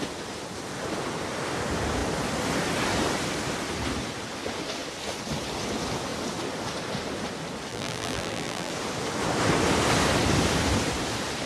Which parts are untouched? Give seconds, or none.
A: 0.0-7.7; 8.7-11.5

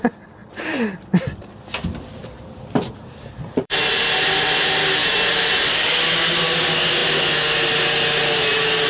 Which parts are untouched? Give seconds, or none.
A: 0.0-0.4; 1.1-2.2; 3.8-8.9

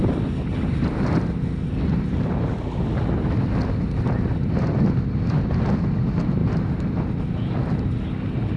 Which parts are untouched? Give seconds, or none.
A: 0.0-8.6

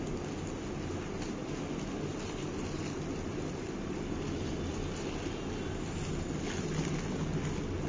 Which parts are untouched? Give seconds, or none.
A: 0.0-2.1; 4.7-7.9

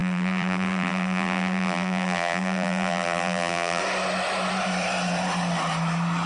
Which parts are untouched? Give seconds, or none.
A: 3.8-6.3

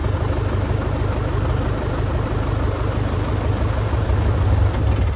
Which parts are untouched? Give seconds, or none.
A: 0.0-1.3; 4.4-5.2